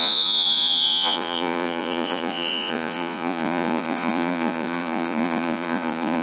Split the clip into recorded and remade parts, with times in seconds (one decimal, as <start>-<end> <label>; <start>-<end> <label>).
0.0-6.2 remade